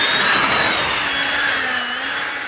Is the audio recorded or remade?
recorded